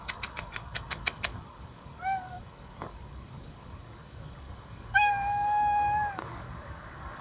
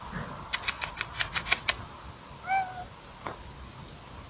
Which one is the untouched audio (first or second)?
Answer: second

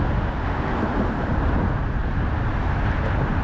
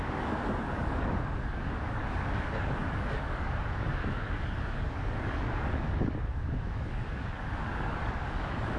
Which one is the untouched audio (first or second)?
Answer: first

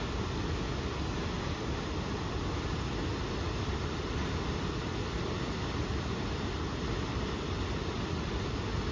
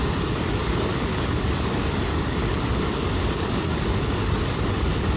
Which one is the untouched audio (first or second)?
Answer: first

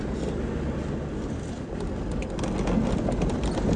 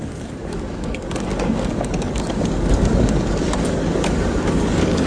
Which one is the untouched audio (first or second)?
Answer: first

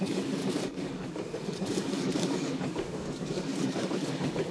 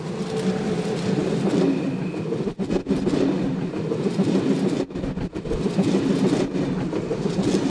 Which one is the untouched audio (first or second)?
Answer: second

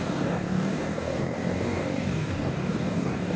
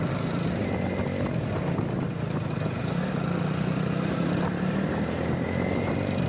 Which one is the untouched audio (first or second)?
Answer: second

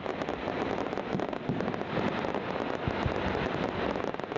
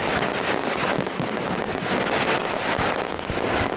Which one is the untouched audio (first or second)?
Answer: first